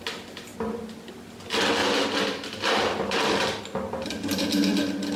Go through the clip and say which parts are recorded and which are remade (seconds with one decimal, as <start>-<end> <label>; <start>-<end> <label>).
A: 0.0-1.8 recorded; 1.8-3.6 remade; 3.6-5.2 recorded